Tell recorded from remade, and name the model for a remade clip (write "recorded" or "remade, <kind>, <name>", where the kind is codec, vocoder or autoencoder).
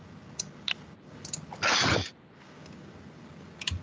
recorded